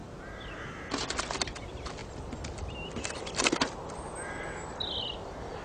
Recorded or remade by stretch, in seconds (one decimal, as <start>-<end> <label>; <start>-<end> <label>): 0.0-5.6 recorded